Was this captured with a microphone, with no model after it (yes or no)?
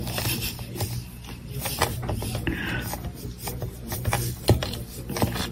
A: yes